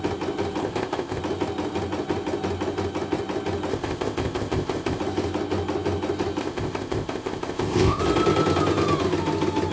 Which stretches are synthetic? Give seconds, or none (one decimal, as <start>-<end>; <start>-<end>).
0.6-1.2; 3.7-5.0; 6.4-8.0